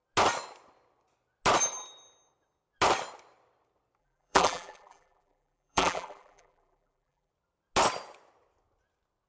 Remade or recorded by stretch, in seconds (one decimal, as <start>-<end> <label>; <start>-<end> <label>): 0.0-4.0 recorded; 4.0-7.3 remade; 7.3-9.3 recorded

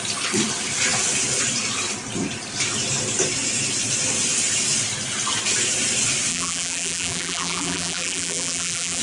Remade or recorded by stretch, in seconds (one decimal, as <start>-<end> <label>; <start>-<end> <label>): 0.0-6.3 recorded; 6.3-9.0 remade

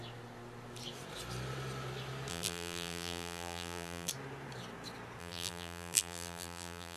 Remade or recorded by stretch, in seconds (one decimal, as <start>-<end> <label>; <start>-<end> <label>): 0.0-2.3 recorded; 2.3-4.1 remade; 4.1-5.2 recorded; 5.2-7.0 remade

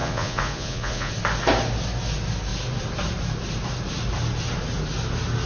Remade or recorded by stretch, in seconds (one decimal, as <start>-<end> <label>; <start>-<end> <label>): 0.0-1.1 remade; 1.1-5.5 recorded

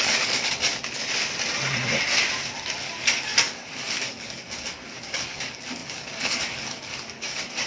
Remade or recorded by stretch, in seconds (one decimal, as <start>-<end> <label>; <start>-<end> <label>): 0.0-0.7 remade; 0.7-2.8 recorded; 2.8-7.7 remade